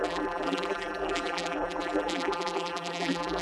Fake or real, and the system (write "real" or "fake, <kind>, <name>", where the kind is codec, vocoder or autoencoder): fake, vocoder, BigVGAN v2